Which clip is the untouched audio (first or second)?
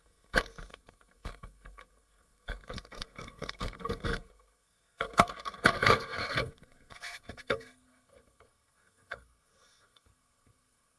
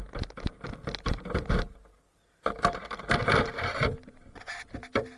second